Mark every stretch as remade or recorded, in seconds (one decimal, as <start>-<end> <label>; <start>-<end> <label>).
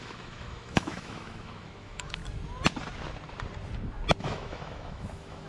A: 0.0-2.2 remade; 2.2-4.2 recorded; 4.2-5.5 remade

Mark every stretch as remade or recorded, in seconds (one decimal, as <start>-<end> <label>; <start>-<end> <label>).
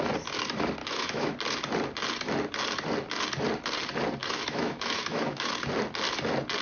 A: 0.0-0.8 recorded; 0.8-1.3 remade; 1.3-4.2 recorded; 4.2-5.5 remade; 5.5-6.6 recorded